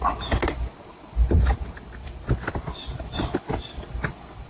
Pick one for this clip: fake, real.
real